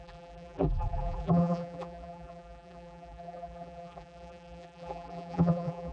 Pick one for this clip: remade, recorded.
remade